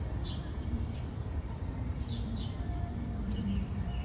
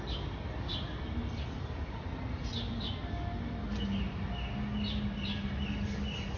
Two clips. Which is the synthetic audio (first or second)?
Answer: first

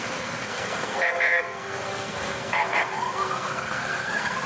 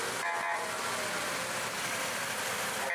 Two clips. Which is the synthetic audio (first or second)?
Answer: first